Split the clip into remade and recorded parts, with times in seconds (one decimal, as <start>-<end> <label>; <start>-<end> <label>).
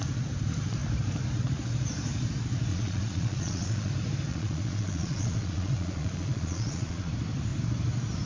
0.0-2.7 recorded; 2.7-3.9 remade; 3.9-4.3 recorded; 4.3-7.1 remade; 7.1-8.3 recorded